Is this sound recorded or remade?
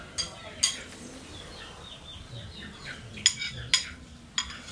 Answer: recorded